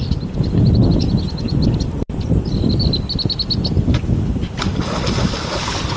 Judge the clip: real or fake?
real